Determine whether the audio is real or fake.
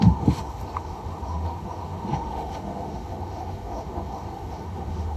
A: fake